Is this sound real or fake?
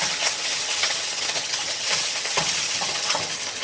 fake